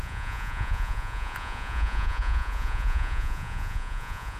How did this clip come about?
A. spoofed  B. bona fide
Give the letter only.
A